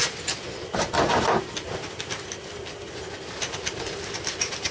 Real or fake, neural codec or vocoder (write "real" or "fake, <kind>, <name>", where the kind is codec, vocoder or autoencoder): real